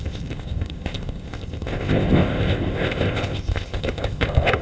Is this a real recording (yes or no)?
no